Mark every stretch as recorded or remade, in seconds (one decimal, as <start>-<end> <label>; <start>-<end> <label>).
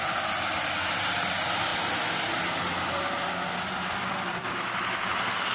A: 0.0-5.5 recorded